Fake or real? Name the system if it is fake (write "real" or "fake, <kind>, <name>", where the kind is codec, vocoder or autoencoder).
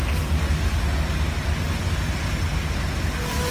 real